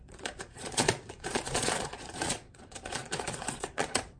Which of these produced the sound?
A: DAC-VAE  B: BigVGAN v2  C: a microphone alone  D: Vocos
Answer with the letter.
D